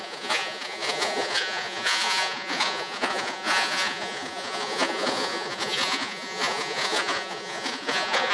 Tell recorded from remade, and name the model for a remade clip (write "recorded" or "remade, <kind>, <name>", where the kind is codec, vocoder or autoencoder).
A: remade, vocoder, Vocos